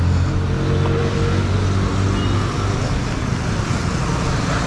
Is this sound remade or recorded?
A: recorded